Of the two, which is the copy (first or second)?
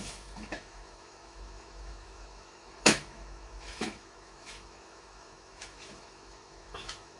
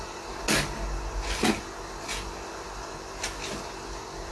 first